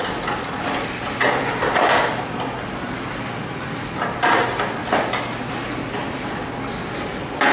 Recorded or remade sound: recorded